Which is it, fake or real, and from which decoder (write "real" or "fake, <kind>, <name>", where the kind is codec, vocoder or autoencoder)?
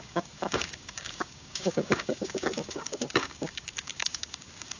fake, codec, DAC